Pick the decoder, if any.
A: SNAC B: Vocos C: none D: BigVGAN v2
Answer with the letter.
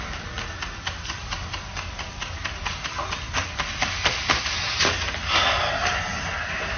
C